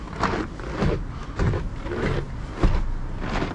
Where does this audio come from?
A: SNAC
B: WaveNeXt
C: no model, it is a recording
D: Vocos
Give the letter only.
C